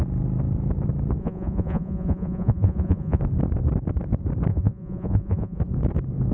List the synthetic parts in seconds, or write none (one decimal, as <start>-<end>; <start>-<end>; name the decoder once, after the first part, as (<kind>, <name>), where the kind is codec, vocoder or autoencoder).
1.2-3.2 (vocoder, Vocos); 4.5-5.6